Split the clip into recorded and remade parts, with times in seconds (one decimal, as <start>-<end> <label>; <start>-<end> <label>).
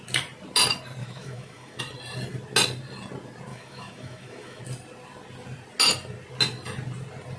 0.0-1.0 recorded; 1.0-1.8 remade; 1.8-3.5 recorded; 3.5-4.6 remade; 4.6-7.4 recorded